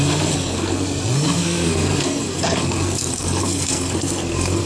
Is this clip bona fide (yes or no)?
no